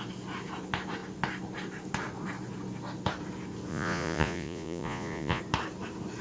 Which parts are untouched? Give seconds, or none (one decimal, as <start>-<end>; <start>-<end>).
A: 0.0-3.7; 5.4-6.2